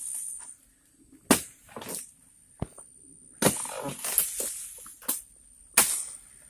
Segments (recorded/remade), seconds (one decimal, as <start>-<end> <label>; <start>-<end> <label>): 0.0-6.5 recorded